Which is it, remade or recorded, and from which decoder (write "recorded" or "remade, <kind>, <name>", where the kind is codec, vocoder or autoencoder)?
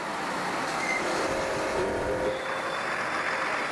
recorded